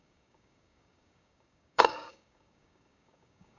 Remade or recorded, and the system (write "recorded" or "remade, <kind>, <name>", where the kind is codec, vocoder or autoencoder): remade, codec, DAC